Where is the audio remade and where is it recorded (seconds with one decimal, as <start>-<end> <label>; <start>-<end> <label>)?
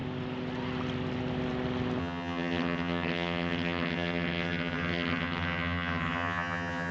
0.0-2.0 recorded; 2.0-6.9 remade